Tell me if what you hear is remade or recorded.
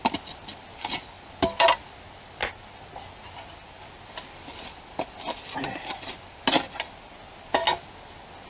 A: recorded